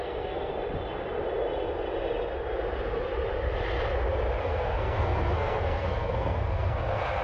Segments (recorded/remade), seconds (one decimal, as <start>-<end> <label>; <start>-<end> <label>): 0.0-0.5 remade; 0.5-4.4 recorded; 4.4-7.2 remade